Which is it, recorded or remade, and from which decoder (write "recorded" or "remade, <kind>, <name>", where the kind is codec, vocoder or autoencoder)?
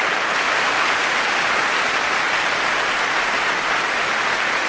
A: recorded